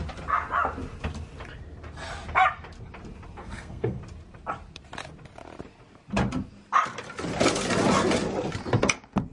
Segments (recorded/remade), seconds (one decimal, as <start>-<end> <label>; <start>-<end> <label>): 0.0-3.4 recorded; 3.4-4.0 remade; 4.0-9.3 recorded